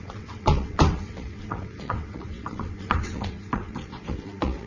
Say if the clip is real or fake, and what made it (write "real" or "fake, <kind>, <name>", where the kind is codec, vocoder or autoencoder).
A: fake, vocoder, WaveNeXt